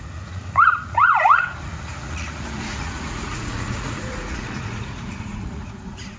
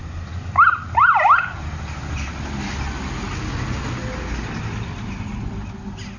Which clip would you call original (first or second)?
second